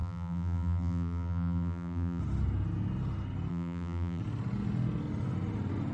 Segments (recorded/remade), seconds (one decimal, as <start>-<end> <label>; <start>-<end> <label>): 0.0-2.2 remade; 2.2-3.5 recorded; 3.5-4.2 remade; 4.2-5.9 recorded